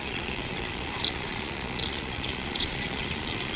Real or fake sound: fake